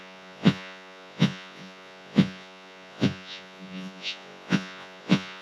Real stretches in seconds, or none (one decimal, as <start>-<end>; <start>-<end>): none